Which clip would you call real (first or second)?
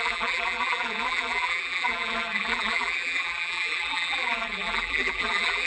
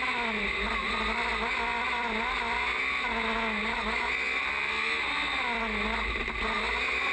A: second